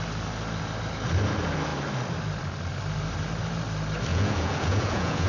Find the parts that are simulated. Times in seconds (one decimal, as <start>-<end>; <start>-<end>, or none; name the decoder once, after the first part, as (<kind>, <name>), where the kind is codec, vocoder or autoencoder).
4.1-5.3 (vocoder, Vocos)